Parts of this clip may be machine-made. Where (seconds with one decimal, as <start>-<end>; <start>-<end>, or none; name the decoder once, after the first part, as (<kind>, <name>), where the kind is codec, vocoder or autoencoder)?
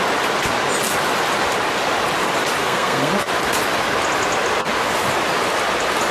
2.6-3.1 (codec, SNAC)